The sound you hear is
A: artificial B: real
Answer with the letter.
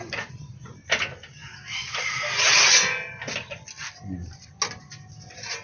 B